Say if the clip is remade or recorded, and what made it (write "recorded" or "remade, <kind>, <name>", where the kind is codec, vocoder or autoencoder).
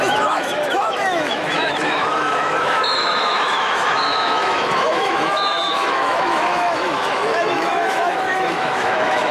remade, autoencoder, DAC-VAE